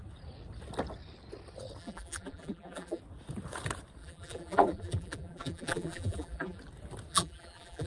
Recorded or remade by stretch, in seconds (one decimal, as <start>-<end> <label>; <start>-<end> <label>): 0.0-1.8 recorded; 1.8-3.0 remade; 3.0-4.0 recorded; 4.0-6.6 remade; 6.6-7.1 recorded; 7.1-7.9 remade